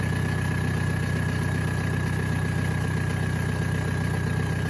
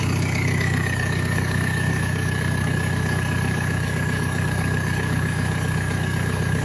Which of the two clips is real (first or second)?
first